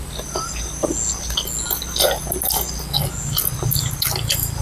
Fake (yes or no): no